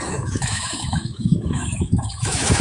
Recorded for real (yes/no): no